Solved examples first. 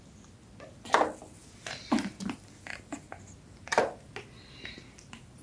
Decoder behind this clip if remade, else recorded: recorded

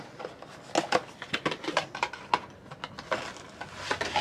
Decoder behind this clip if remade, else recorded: recorded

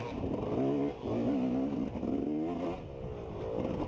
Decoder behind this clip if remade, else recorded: recorded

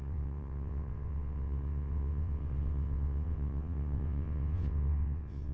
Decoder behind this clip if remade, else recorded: remade, vocoder, WaveNeXt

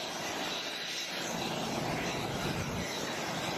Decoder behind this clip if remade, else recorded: recorded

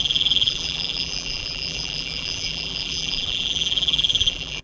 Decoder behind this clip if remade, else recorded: remade, vocoder, BigVGAN v2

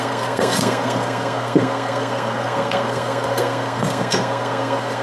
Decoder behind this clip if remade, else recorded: remade, codec, SNAC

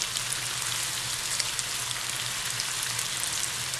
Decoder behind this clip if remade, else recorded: recorded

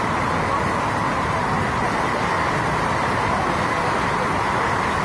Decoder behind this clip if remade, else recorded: recorded